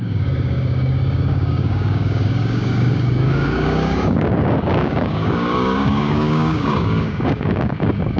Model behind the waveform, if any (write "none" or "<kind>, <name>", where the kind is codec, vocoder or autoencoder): codec, DAC